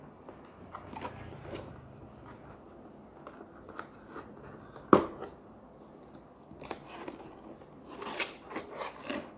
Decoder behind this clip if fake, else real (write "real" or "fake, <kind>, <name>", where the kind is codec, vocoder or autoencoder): real